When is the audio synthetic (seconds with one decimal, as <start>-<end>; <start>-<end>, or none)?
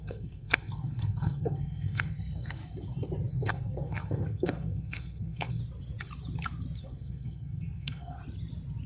0.0-2.6; 3.3-5.6; 6.8-8.2